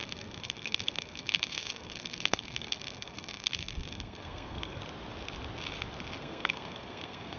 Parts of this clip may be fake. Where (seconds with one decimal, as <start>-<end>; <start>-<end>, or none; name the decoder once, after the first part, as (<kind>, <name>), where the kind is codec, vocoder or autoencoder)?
0.0-4.8 (codec, SNAC); 6.2-7.4